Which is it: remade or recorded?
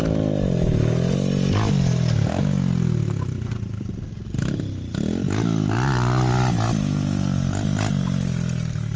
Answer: recorded